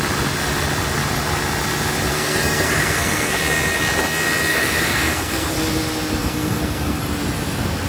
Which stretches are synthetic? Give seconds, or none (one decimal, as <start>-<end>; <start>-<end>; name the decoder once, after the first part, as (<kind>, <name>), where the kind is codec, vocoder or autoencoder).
2.1-3.4 (codec, SNAC); 4.5-5.5; 6.2-7.0